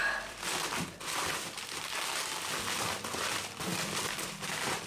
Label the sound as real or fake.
fake